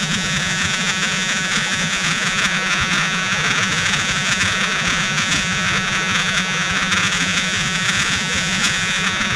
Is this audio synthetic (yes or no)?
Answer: yes